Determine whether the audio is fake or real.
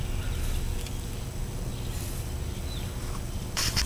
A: real